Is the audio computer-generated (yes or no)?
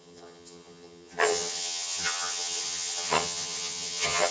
yes